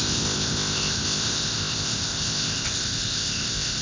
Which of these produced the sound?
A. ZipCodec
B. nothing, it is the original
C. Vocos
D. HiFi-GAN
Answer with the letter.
A